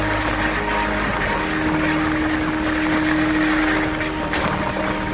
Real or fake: real